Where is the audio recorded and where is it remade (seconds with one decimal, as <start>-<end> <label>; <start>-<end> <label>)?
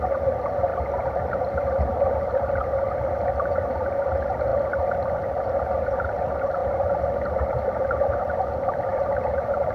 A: 0.0-4.5 remade; 4.5-5.5 recorded; 5.5-9.7 remade